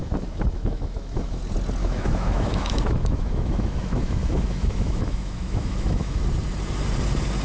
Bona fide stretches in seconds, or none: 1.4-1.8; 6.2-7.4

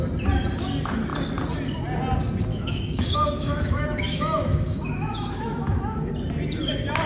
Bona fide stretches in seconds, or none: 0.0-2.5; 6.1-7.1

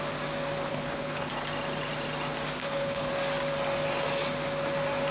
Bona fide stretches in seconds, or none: 0.0-0.7; 1.3-2.6; 3.1-5.1